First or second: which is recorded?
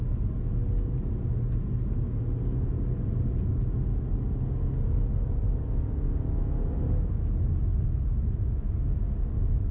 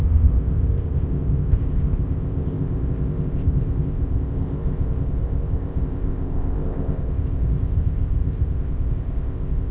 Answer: first